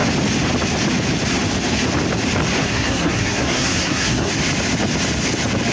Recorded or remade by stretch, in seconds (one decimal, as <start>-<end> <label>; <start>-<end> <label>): 0.0-2.6 recorded; 2.6-4.3 remade; 4.3-5.7 recorded